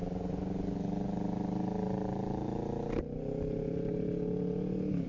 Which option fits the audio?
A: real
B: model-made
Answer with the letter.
A